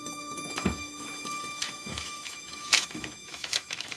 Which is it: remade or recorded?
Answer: remade